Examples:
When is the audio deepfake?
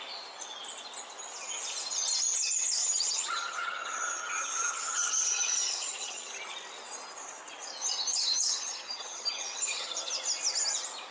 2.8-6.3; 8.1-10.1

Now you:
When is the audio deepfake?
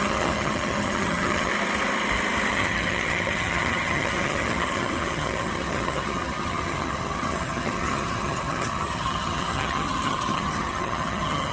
0.0-1.5; 2.5-11.5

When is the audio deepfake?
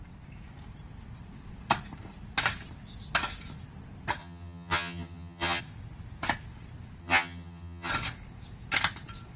4.2-5.6; 7.0-7.9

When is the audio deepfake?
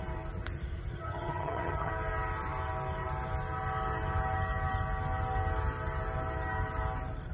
0.9-1.9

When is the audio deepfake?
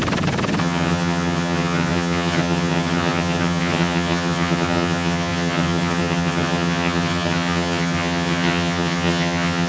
0.6-9.7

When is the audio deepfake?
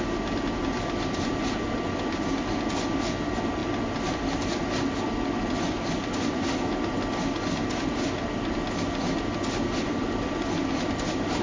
none